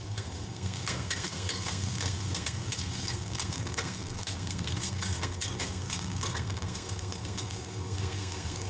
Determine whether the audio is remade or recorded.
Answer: remade